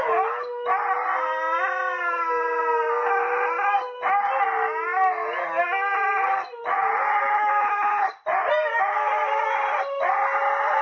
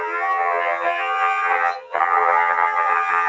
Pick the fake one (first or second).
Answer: second